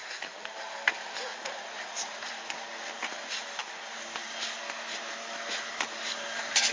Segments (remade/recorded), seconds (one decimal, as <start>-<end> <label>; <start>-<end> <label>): 0.0-1.3 recorded; 1.3-2.4 remade; 2.4-6.7 recorded